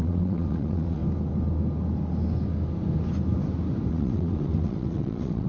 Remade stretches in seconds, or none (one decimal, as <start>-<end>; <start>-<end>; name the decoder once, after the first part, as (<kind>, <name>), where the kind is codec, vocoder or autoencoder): 0.0-1.0 (vocoder, WaveNeXt); 3.9-5.5